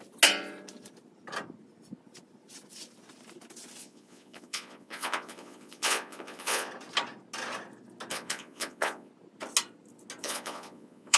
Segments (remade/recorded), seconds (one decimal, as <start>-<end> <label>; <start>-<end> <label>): 0.0-3.8 recorded; 3.8-6.7 remade; 6.7-8.1 recorded; 8.1-9.1 remade; 9.1-10.2 recorded; 10.2-11.2 remade